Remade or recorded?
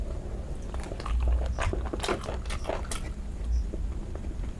recorded